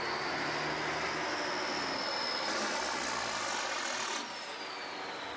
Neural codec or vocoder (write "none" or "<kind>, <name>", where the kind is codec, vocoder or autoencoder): none